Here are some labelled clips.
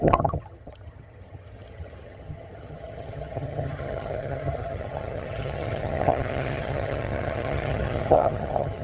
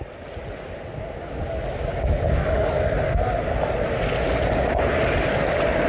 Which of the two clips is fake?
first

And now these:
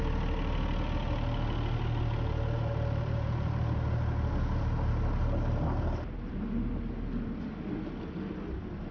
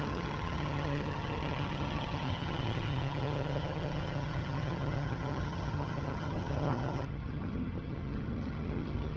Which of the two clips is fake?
second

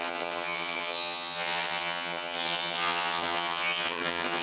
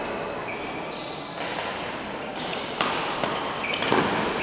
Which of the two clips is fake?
first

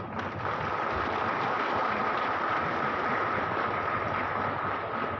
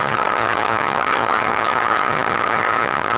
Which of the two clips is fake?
second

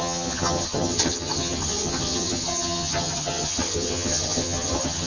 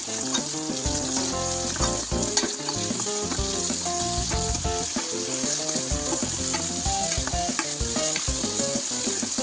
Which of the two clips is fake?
first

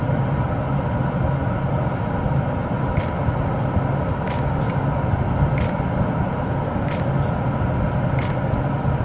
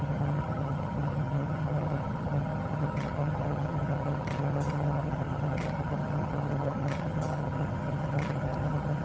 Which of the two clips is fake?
second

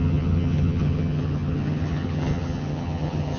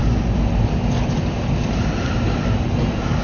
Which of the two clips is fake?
first